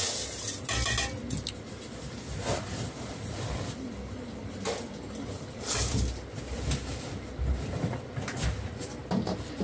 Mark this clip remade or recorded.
recorded